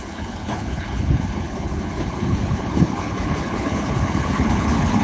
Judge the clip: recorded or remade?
remade